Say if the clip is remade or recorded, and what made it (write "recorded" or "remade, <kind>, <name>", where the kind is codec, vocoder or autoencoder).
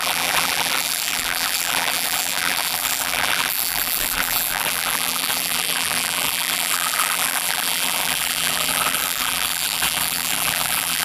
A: remade, vocoder, BigVGAN v2